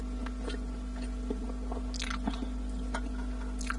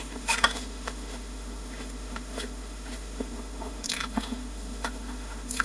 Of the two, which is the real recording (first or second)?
first